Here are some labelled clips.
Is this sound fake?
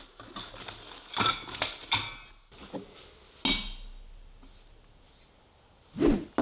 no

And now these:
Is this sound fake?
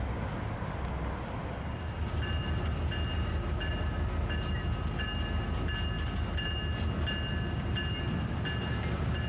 no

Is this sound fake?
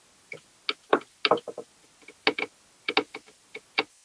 no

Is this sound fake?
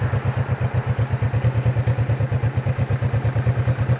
no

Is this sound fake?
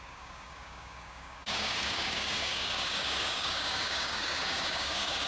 yes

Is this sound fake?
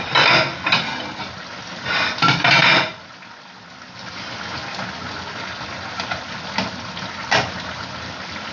no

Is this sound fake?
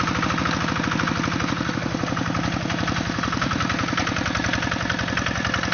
no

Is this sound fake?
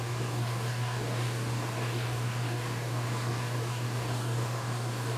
yes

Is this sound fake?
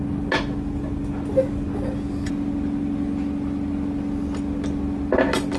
no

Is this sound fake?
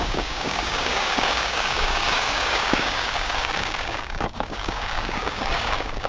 yes